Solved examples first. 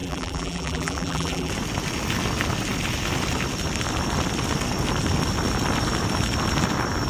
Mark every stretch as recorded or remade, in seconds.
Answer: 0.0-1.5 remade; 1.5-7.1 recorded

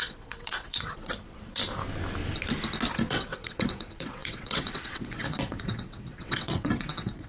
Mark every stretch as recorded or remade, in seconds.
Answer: 0.0-1.6 remade; 1.6-3.1 recorded; 3.1-7.3 remade

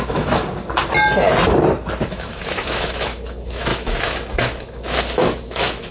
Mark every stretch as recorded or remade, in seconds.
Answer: 0.0-0.4 remade; 0.4-2.1 recorded; 2.1-5.9 remade

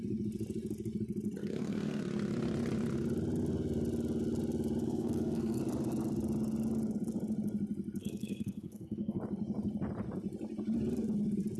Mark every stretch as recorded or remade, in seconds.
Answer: 0.0-1.4 recorded; 1.4-2.0 remade; 2.0-4.8 recorded; 4.8-5.6 remade; 5.6-8.0 recorded; 8.0-9.2 remade; 9.2-11.6 recorded

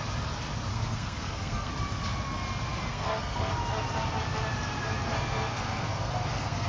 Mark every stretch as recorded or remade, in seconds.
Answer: 0.0-0.7 recorded; 0.7-1.7 remade; 1.7-2.9 recorded; 2.9-3.5 remade; 3.5-4.9 recorded; 4.9-6.7 remade